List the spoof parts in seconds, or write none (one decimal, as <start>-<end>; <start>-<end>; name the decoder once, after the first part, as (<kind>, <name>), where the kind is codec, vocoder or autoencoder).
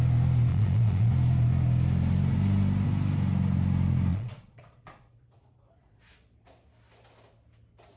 0.5-1.1 (vocoder, Vocos); 4.1-6.0